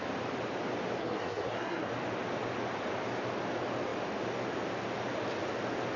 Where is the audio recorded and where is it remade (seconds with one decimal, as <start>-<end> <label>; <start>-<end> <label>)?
0.0-1.0 recorded; 1.0-1.9 remade; 1.9-6.0 recorded